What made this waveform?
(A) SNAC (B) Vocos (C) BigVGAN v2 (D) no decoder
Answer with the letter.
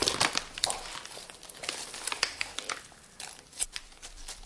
C